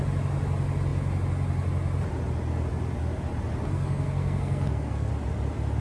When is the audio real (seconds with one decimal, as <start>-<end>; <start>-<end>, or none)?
0.0-3.7; 5.1-5.8